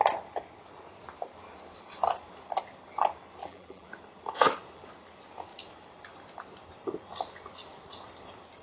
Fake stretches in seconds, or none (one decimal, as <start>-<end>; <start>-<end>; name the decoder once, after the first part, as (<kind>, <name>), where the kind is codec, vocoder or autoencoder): 3.4-3.9 (vocoder, BigVGAN v2)